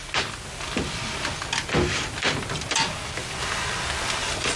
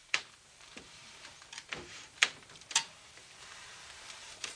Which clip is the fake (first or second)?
second